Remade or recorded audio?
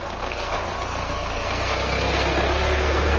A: remade